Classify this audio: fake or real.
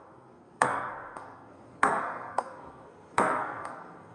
fake